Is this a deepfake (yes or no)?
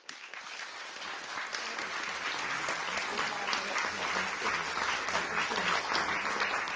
no